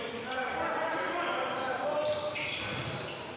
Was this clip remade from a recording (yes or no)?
no